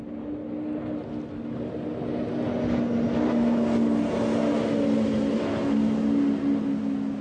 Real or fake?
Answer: real